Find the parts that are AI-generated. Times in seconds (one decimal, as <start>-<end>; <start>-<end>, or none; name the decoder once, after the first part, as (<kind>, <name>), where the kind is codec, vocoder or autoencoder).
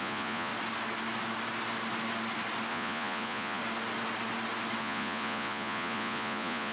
0.0-0.5 (vocoder, Vocos); 2.7-3.6; 4.8-6.7